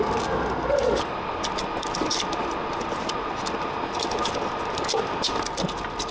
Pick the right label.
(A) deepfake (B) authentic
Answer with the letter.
B